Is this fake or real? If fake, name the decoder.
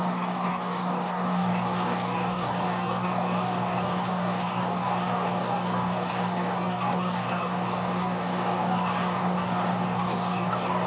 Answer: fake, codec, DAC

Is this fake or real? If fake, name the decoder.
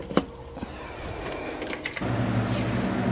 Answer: real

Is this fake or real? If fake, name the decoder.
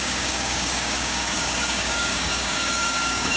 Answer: fake, codec, DAC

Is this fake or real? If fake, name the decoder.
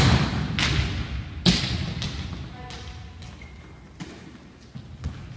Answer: real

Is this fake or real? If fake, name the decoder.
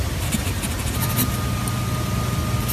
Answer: real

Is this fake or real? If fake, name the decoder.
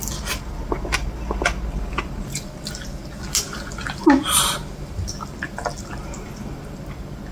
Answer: real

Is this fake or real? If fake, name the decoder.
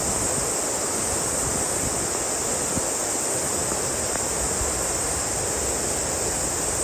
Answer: real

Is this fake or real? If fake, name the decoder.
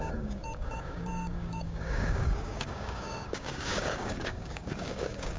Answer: fake, codec, DAC